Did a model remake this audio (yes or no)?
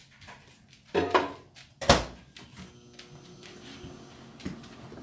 no